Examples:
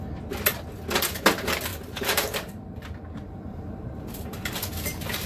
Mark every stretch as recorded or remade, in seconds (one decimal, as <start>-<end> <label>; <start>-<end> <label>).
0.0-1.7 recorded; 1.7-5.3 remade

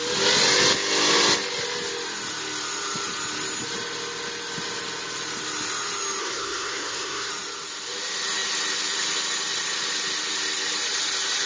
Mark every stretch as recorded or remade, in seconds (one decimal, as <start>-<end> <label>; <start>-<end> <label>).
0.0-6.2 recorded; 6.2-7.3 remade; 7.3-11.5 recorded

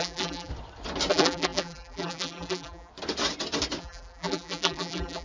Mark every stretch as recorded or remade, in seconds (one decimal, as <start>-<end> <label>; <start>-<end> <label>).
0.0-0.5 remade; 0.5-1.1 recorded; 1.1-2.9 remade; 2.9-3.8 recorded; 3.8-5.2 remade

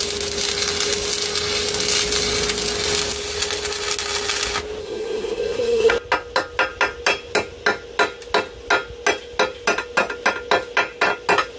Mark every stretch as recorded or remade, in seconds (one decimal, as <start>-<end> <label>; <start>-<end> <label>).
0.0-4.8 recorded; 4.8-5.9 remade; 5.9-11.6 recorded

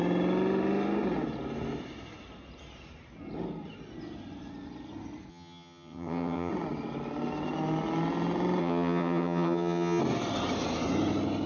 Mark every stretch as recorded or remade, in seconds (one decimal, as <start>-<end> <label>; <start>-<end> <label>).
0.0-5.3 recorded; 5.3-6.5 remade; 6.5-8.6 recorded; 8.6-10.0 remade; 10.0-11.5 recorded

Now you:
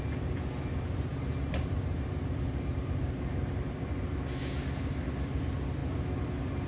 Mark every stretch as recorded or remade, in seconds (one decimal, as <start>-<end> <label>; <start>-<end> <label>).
0.0-1.1 recorded; 1.1-4.1 remade; 4.1-6.7 recorded